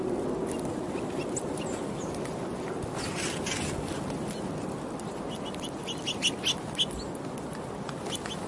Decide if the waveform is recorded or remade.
recorded